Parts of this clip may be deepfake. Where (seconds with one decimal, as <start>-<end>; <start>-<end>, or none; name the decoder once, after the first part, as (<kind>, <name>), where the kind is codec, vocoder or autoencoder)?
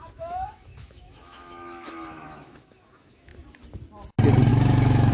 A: 0.0-3.3 (autoencoder, DAC-VAE); 4.5-5.1